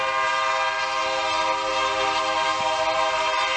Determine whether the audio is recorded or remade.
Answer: recorded